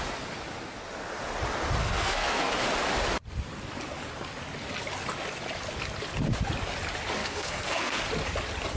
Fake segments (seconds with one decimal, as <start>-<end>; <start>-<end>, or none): 1.8-2.5; 7.2-8.0